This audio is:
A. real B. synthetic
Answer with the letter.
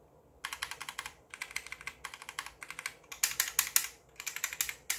A